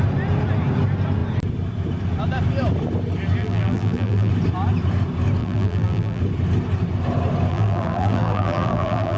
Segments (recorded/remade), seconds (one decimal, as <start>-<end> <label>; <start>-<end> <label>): 0.0-3.4 recorded; 3.4-4.3 remade; 4.3-5.4 recorded; 5.4-6.2 remade; 6.2-7.5 recorded; 7.5-9.2 remade